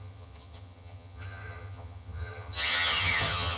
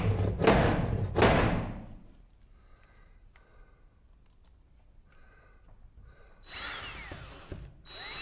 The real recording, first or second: second